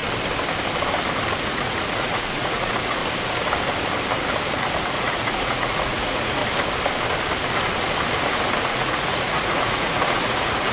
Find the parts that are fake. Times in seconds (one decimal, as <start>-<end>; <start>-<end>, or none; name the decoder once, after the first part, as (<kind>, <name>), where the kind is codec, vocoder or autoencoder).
1.4-3.0 (vocoder, Vocos); 4.9-6.4; 8.6-10.7